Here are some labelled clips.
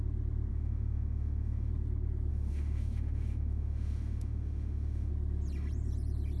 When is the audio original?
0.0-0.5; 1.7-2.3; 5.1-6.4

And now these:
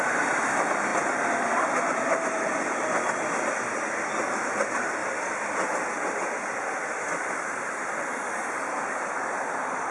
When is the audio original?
none